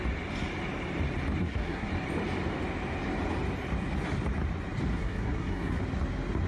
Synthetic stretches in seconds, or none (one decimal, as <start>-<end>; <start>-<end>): 1.4-1.9; 4.9-5.8